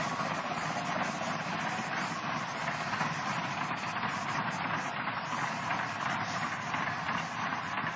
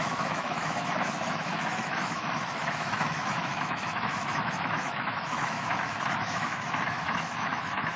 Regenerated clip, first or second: second